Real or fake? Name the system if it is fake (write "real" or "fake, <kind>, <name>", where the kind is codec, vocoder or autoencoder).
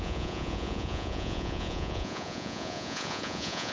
fake, vocoder, Vocos